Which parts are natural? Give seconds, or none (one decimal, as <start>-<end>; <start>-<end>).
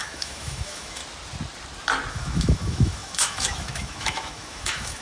1.0-2.1